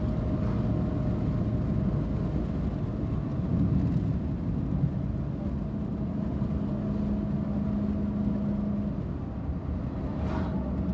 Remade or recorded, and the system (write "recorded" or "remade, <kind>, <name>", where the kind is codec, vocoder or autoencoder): recorded